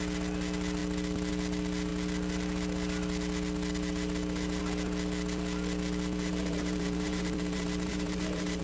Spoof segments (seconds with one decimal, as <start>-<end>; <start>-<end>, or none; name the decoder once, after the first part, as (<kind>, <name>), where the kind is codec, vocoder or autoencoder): 6.3-8.6 (vocoder, BigVGAN v2)